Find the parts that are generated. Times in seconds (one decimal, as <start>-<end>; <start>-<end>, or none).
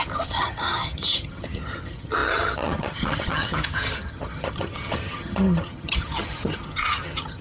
0.0-7.4